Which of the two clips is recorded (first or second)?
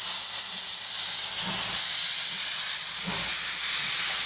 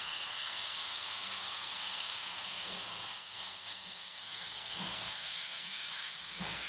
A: first